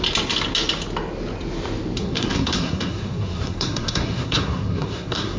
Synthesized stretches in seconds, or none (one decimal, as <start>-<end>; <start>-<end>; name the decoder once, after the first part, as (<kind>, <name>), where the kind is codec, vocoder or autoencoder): 2.0-5.4 (codec, SNAC)